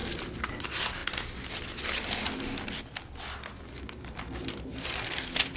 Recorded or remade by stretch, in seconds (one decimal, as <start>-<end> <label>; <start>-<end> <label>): 0.0-1.0 remade; 1.0-4.4 recorded; 4.4-5.6 remade